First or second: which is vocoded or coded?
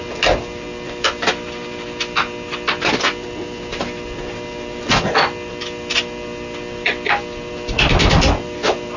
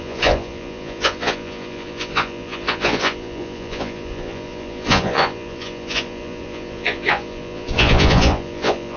second